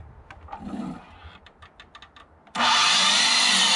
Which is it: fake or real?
real